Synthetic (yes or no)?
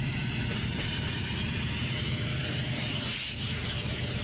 yes